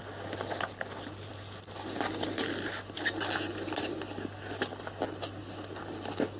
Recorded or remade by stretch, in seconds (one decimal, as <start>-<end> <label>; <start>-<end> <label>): 0.0-6.4 recorded